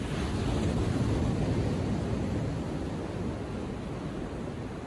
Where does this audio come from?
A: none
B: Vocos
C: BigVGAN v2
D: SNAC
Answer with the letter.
A